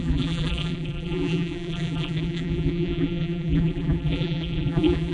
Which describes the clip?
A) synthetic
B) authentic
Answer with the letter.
A